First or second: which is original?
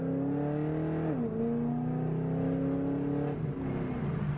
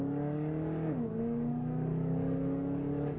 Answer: first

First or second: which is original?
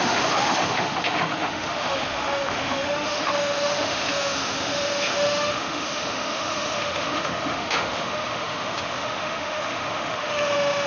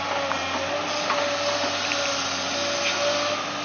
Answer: second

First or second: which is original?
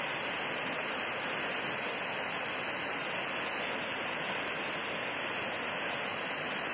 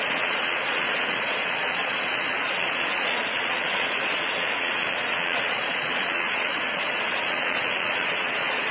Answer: first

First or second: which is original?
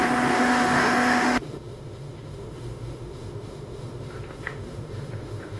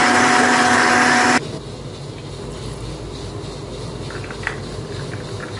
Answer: second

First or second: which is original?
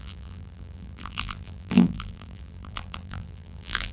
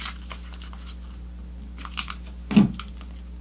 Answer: second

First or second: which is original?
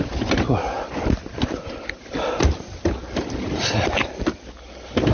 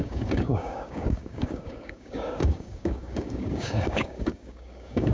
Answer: first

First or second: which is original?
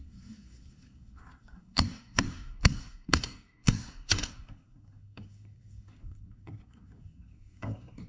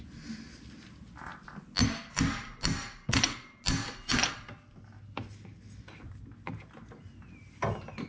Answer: second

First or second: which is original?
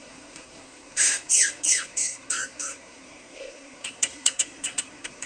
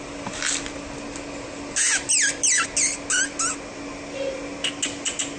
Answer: second